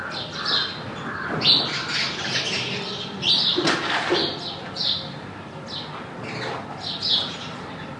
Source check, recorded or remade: recorded